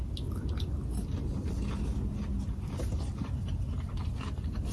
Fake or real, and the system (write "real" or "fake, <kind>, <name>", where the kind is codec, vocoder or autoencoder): real